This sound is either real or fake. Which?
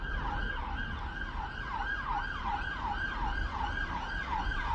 real